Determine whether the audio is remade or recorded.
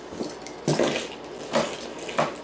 recorded